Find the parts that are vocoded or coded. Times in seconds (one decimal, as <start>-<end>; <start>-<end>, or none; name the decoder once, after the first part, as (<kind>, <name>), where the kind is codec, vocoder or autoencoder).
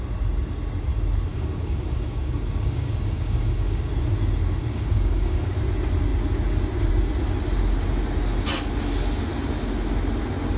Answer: 1.3-3.9 (codec, DAC); 4.6-5.5